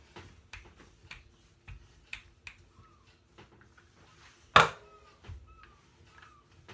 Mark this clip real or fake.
real